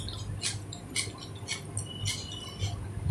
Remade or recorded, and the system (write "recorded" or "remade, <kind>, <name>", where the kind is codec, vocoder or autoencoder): recorded